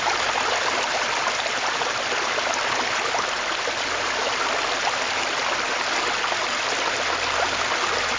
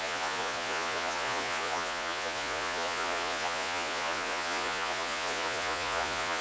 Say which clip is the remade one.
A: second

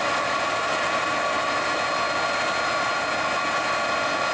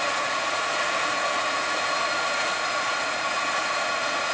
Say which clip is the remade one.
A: second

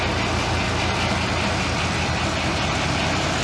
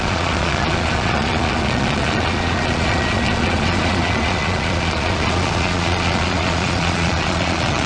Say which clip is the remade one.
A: second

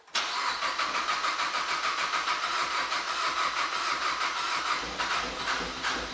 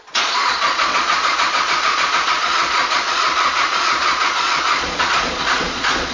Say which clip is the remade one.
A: second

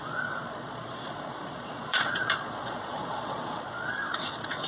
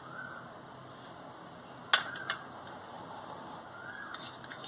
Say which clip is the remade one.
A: first